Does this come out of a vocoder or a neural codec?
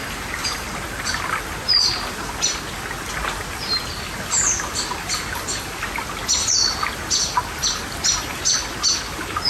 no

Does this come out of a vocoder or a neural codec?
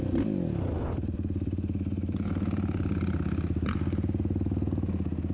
no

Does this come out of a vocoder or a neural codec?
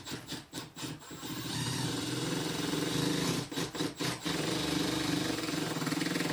yes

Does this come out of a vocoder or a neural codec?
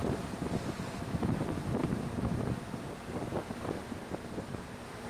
no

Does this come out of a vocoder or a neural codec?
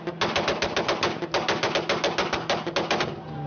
no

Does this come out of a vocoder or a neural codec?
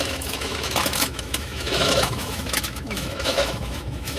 yes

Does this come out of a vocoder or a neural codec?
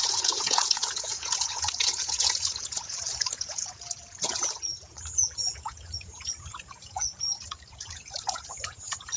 yes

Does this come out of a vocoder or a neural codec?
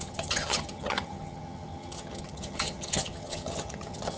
yes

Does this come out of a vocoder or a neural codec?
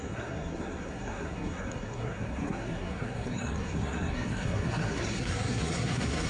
yes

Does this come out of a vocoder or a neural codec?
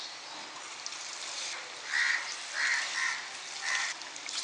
yes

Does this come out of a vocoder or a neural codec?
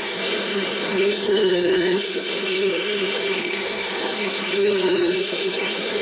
yes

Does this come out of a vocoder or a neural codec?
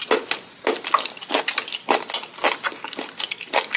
no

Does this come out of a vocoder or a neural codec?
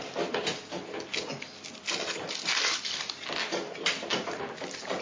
no